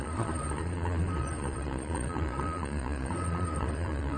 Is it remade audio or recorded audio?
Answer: remade